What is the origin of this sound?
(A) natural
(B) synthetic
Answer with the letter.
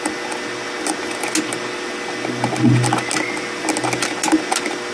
A